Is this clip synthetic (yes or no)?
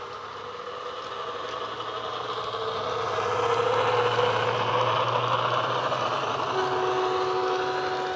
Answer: no